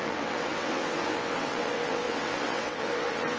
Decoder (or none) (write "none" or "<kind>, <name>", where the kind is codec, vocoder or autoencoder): vocoder, WaveNeXt